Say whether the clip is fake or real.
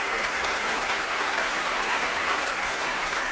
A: fake